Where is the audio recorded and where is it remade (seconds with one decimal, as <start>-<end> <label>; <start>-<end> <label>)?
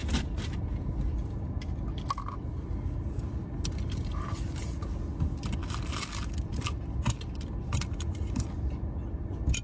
0.0-9.6 recorded